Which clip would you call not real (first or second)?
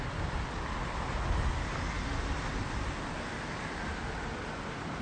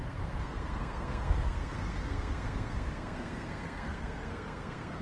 second